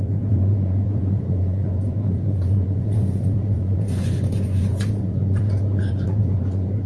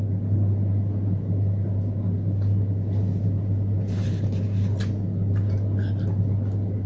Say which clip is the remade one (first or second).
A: first